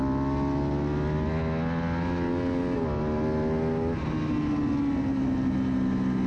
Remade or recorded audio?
recorded